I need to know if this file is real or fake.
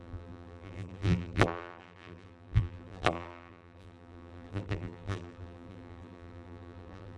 fake